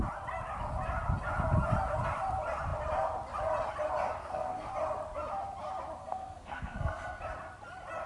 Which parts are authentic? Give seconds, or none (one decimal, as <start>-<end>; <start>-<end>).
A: 0.0-4.2; 4.7-6.0; 7.2-8.1